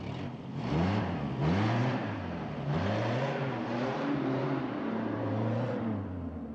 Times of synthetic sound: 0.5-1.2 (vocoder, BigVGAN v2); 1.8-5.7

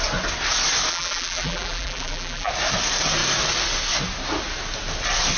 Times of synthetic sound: 0.9-2.5 (vocoder, BigVGAN v2)

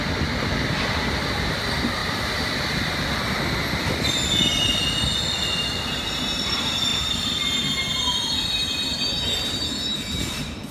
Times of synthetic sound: 2.0-3.2 (vocoder, BigVGAN v2); 6.9-10.7

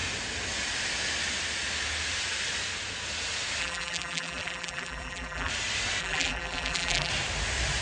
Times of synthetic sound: 3.6-5.5 (vocoder, BigVGAN v2); 6.0-7.1

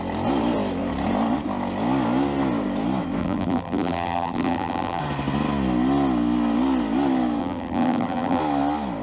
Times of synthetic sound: 3.2-5.0 (vocoder, BigVGAN v2); 7.4-8.4